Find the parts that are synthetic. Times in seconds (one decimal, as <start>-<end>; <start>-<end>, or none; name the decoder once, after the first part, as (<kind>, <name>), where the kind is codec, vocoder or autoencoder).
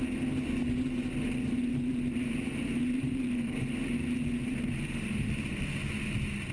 1.7-5.6 (vocoder, BigVGAN v2)